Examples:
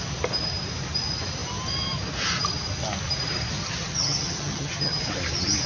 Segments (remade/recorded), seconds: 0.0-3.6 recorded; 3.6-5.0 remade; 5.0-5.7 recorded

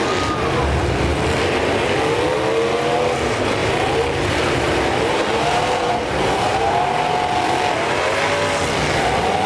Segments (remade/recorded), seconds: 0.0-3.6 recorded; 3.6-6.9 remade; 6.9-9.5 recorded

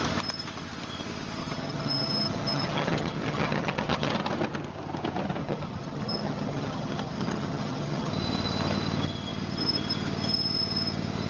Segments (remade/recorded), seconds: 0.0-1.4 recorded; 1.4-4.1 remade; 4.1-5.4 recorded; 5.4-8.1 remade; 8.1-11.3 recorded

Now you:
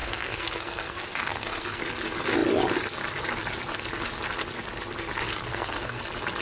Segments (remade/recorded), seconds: 0.0-1.8 remade; 1.8-5.5 recorded; 5.5-6.0 remade; 6.0-6.4 recorded

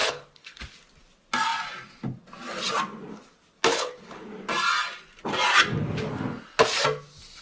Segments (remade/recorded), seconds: 0.0-0.6 remade; 0.6-3.7 recorded; 3.7-4.3 remade; 4.3-7.4 recorded

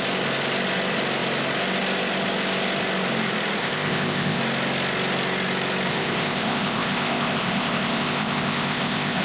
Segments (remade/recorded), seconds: 0.0-3.6 recorded; 3.6-4.4 remade; 4.4-5.9 recorded; 5.9-9.2 remade

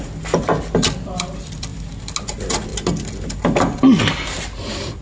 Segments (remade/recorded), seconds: 0.0-1.7 remade; 1.7-2.2 recorded; 2.2-2.7 remade; 2.7-5.0 recorded